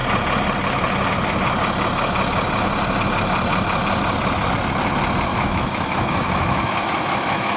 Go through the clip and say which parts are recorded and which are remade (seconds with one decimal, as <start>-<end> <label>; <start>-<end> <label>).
0.0-5.3 recorded; 5.3-7.6 remade